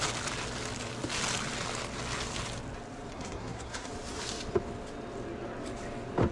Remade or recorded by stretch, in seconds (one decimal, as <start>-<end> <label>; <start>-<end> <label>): 0.0-3.1 recorded; 3.1-3.9 remade; 3.9-6.3 recorded